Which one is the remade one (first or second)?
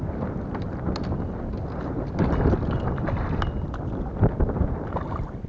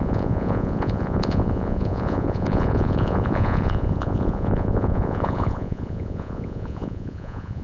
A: second